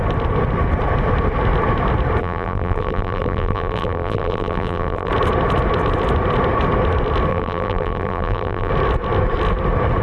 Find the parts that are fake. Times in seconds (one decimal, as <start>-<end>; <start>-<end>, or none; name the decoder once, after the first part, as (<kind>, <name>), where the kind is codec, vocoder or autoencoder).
2.2-5.1 (vocoder, BigVGAN v2); 7.3-8.7